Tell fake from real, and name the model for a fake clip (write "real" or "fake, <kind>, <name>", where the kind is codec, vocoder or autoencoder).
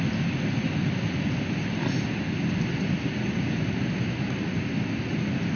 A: real